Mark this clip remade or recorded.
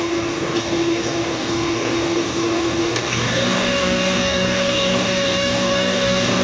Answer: remade